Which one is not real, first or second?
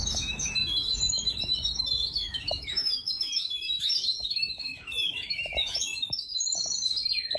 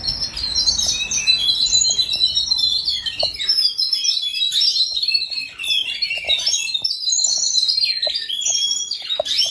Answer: first